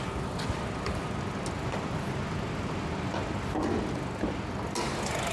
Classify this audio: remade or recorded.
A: recorded